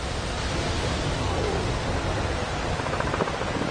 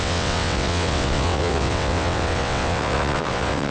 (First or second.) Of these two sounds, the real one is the first